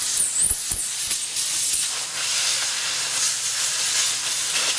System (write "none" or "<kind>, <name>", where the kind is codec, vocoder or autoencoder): none